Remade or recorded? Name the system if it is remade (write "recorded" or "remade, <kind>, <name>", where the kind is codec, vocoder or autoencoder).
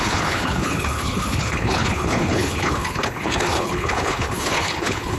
remade, codec, HILCodec